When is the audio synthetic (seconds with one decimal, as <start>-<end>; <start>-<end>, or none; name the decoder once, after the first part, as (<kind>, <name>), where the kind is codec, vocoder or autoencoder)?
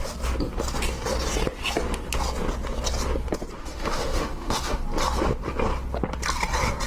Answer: 3.6-4.8 (autoencoder, DAC-VAE)